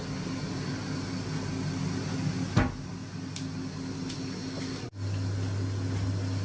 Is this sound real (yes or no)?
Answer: yes